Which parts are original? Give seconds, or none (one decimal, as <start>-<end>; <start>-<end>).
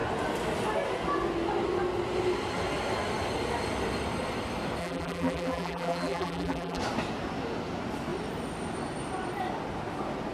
0.0-4.8; 6.8-10.3